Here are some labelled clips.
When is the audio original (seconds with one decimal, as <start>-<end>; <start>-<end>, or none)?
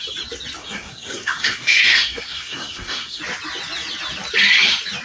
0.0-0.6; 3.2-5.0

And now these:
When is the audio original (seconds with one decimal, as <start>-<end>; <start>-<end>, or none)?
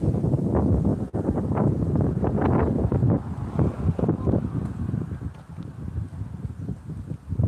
0.0-7.5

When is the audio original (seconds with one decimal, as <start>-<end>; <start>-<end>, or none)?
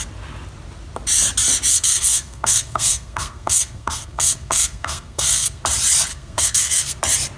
0.0-1.7; 5.6-6.1; 7.0-7.4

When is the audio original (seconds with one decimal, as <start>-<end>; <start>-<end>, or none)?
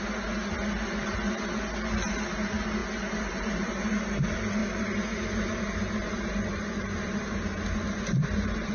0.0-8.7